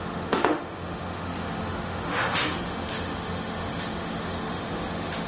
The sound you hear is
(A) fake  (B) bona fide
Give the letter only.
A